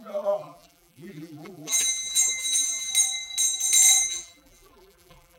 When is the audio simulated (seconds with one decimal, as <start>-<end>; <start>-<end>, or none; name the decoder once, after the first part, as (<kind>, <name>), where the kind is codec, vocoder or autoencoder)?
0.0-2.9 (vocoder, BigVGAN v2); 4.0-5.4